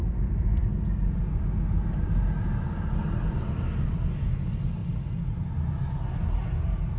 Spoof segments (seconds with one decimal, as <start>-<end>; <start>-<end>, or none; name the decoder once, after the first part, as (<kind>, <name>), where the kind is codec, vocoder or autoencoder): none